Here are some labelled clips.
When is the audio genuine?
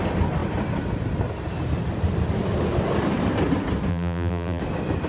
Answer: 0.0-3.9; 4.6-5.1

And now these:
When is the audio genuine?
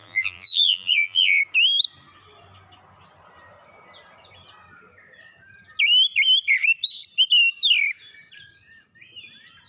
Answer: 1.4-9.7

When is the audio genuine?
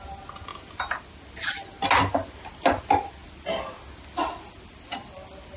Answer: 0.0-5.6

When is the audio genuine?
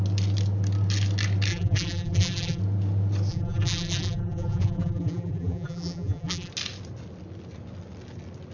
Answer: 0.0-1.5; 2.6-3.3; 6.5-8.5